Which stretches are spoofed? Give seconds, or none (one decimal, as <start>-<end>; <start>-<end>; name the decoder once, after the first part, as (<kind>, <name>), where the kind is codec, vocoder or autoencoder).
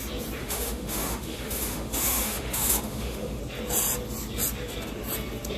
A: 0.4-3.4 (autoencoder, DAC-VAE)